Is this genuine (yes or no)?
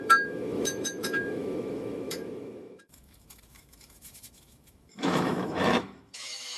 no